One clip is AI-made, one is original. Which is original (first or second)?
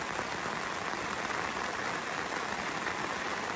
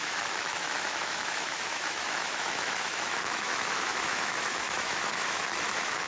first